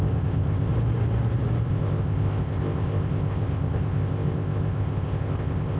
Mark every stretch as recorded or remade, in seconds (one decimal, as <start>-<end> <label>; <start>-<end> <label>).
0.0-0.7 remade; 0.7-1.7 recorded; 1.7-5.8 remade